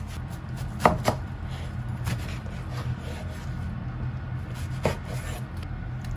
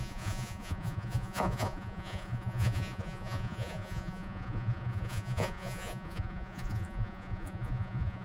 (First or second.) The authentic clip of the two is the first